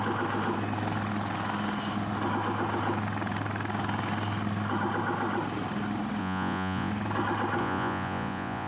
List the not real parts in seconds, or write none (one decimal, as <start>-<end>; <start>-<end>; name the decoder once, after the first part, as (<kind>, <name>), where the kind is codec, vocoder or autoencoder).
6.2-6.9 (vocoder, Vocos); 7.6-8.7